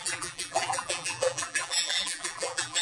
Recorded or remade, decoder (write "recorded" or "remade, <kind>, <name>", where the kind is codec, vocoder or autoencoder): remade, vocoder, BigVGAN v2